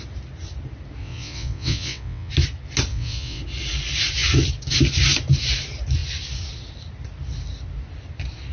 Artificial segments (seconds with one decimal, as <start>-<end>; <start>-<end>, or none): 1.0-2.3; 2.9-3.4